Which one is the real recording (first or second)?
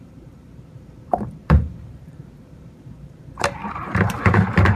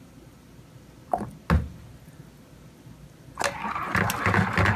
second